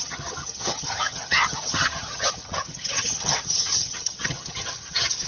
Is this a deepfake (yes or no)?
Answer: yes